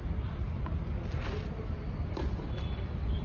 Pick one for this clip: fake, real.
real